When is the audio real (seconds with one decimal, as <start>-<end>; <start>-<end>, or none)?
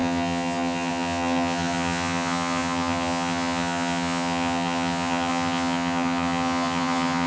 none